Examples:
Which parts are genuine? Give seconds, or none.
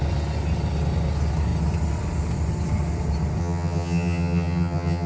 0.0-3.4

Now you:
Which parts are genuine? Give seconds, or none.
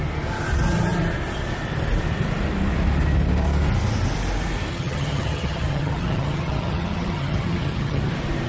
0.0-4.7; 8.1-8.5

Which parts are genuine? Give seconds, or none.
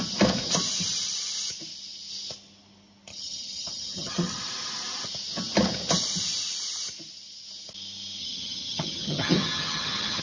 0.0-3.1; 4.4-8.2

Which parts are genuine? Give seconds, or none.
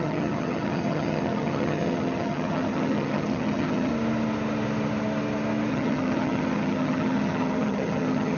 3.9-5.7